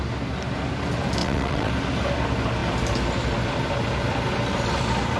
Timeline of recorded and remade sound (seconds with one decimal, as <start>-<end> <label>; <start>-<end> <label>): 0.0-1.2 recorded; 1.2-1.7 remade; 1.7-5.2 recorded